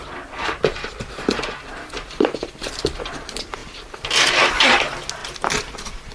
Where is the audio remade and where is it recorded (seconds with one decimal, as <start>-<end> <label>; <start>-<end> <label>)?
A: 0.0-6.1 recorded

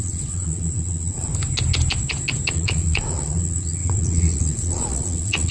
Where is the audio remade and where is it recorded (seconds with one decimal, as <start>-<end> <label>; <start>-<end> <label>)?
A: 0.0-1.3 remade; 1.3-2.5 recorded; 2.5-5.5 remade

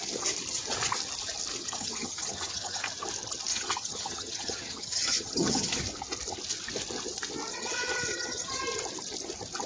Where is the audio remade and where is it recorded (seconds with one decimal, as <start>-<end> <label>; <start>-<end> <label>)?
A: 0.0-1.6 recorded; 1.6-2.9 remade; 2.9-3.5 recorded; 3.5-5.8 remade; 5.8-7.5 recorded; 7.5-8.6 remade; 8.6-9.7 recorded

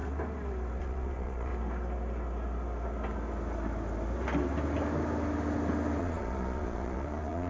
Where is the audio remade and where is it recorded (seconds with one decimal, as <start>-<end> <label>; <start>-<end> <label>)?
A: 0.0-0.8 recorded; 0.8-1.5 remade; 1.5-6.0 recorded; 6.0-7.5 remade

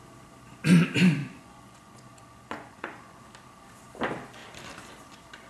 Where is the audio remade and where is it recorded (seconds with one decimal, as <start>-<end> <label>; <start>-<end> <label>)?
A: 0.0-1.2 recorded; 1.2-3.2 remade; 3.2-5.5 recorded

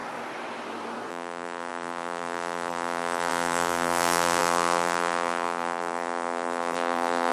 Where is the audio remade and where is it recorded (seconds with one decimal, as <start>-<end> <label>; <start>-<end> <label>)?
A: 0.0-1.1 recorded; 1.1-7.3 remade